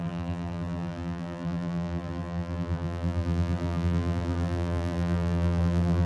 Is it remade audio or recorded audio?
remade